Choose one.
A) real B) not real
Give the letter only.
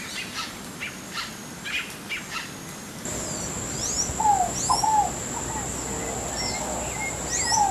A